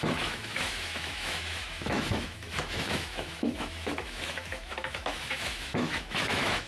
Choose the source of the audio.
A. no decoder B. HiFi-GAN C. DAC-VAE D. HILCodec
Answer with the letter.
C